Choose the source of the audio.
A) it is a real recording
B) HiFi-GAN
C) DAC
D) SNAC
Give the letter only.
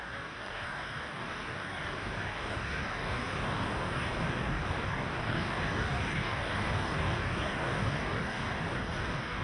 C